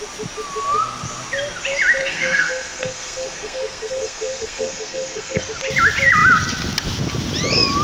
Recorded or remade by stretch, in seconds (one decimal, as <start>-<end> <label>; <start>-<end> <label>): 0.0-2.0 recorded; 2.0-5.4 remade; 5.4-7.8 recorded